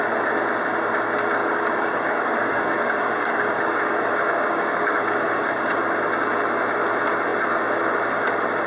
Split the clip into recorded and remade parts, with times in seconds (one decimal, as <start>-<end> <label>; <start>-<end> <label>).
0.0-1.4 recorded; 1.4-5.8 remade; 5.8-8.7 recorded